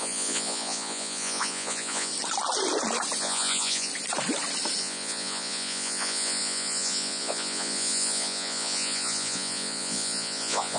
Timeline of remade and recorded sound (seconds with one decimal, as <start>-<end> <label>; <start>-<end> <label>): 0.0-2.1 remade; 2.1-3.2 recorded; 3.2-3.9 remade; 3.9-4.8 recorded; 4.8-10.8 remade